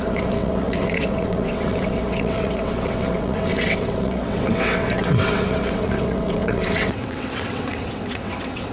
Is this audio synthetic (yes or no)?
yes